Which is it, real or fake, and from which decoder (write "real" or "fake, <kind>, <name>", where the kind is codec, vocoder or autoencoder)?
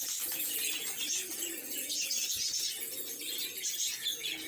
fake, vocoder, Vocos